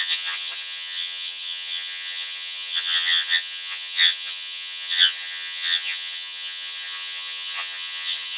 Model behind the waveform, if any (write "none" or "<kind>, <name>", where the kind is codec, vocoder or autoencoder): vocoder, HiFi-GAN